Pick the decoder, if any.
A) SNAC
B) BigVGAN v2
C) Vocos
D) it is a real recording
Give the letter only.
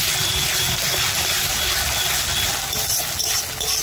D